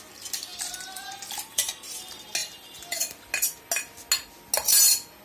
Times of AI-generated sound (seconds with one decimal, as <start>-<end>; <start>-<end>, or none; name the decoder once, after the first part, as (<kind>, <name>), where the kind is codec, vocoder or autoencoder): 0.5-2.0 (vocoder, BigVGAN v2); 2.4-3.3